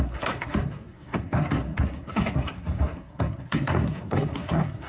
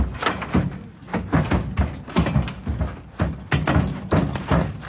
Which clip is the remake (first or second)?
first